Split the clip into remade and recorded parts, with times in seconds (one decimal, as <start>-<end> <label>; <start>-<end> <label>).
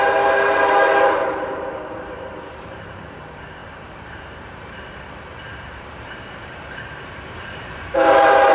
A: 0.0-8.5 remade